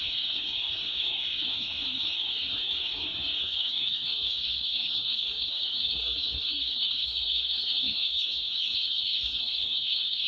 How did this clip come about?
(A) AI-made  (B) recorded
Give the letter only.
A